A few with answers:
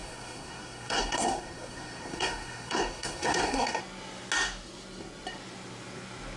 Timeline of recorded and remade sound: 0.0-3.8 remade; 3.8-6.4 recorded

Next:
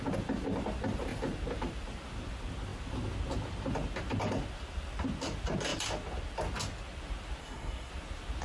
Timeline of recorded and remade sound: 0.0-7.4 recorded; 7.4-7.9 remade; 7.9-8.4 recorded